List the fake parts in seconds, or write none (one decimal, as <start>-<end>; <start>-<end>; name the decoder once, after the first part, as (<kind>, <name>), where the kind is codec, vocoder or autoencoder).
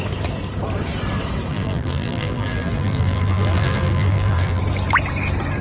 1.5-4.6 (vocoder, BigVGAN v2)